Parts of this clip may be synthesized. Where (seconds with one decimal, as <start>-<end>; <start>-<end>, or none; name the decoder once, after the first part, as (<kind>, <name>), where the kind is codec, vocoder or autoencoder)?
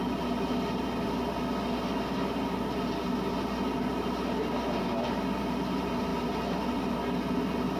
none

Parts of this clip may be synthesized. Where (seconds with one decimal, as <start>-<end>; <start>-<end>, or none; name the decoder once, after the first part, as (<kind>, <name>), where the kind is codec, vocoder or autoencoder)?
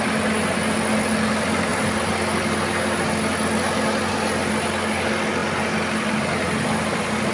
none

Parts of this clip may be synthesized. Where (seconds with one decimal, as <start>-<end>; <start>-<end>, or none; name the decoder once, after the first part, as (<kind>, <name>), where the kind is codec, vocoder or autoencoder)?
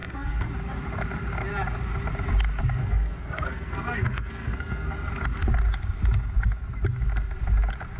0.0-0.5 (codec, SNAC); 2.8-5.1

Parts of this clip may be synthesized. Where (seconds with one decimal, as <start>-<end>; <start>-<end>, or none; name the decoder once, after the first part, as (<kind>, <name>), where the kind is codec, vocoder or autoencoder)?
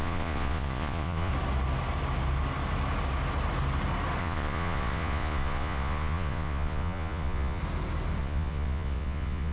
0.0-1.3 (vocoder, Vocos); 4.2-7.6; 8.2-9.5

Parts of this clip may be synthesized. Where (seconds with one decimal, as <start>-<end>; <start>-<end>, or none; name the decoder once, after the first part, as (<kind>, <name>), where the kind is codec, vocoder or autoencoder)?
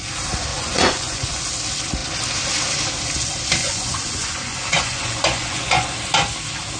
0.5-1.4 (vocoder, Vocos); 3.6-5.9